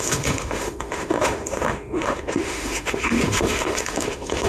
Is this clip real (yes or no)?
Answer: no